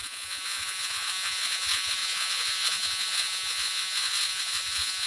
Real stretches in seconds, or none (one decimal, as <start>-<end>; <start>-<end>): none